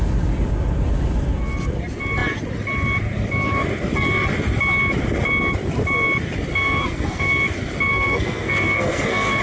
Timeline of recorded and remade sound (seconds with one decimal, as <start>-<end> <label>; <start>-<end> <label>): 0.0-6.5 recorded; 6.5-7.3 remade; 7.3-7.9 recorded; 7.9-9.4 remade